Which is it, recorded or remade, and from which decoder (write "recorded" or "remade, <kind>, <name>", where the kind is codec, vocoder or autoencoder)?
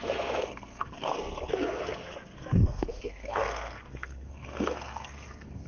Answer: remade, codec, SNAC